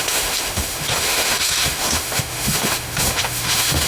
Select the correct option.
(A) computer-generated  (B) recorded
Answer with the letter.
A